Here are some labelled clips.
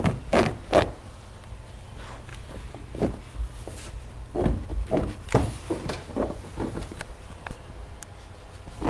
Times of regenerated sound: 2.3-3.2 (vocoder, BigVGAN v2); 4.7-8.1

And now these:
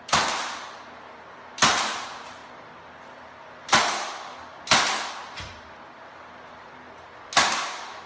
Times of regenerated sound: none

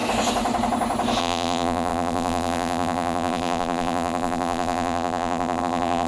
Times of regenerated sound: 1.2-6.1 (vocoder, BigVGAN v2)

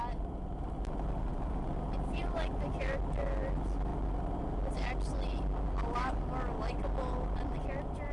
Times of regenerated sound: none

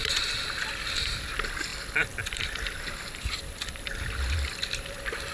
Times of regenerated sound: 0.0-0.8 (vocoder, BigVGAN v2); 1.7-5.3

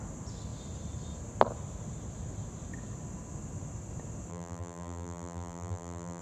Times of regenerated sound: 4.3-6.2 (vocoder, BigVGAN v2)